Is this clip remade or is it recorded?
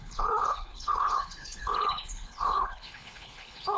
remade